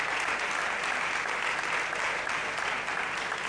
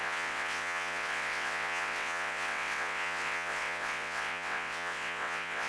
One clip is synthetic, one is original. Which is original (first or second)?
first